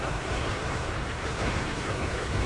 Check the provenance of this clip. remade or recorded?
remade